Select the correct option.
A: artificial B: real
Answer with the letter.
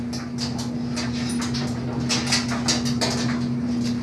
B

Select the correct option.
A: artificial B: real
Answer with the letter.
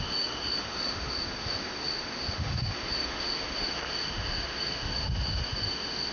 A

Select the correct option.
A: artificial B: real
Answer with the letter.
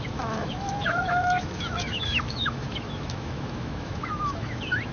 A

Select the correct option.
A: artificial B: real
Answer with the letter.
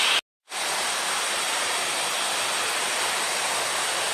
B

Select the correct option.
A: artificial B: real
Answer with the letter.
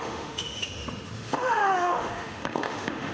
A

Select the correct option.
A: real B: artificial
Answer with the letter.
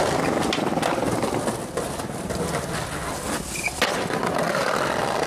A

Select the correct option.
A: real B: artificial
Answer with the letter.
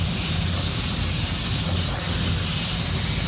A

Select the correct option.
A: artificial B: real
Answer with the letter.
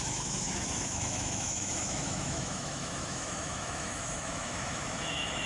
A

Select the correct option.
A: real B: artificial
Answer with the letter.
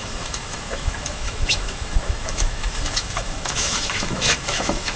B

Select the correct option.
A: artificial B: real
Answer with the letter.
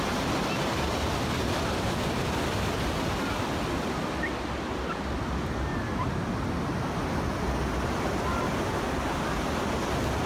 B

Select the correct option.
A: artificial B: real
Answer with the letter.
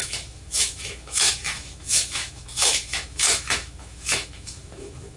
A